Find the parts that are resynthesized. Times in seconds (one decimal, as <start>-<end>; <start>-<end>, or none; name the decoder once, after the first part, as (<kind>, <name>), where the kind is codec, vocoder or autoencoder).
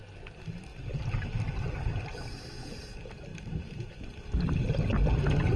0.7-2.0 (vocoder, BigVGAN v2); 3.3-4.2